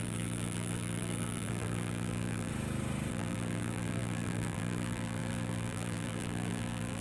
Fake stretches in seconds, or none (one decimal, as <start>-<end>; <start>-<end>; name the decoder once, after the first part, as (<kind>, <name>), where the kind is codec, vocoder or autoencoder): 0.0-2.5 (vocoder, BigVGAN v2); 3.1-7.0